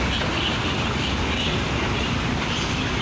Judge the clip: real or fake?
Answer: real